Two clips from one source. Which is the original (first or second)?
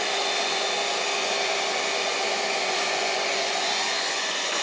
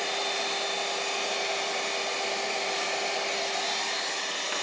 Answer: second